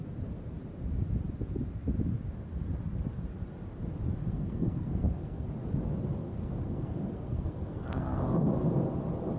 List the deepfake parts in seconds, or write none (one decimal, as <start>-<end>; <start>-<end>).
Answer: 4.2-5.5; 6.2-8.2